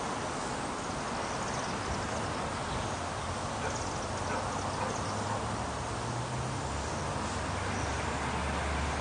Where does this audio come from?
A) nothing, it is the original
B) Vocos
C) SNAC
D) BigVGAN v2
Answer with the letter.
A